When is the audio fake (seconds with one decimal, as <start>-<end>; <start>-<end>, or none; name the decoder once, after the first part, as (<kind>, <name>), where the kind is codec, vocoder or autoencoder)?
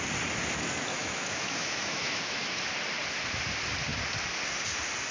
0.9-2.4 (autoencoder, DAC-VAE)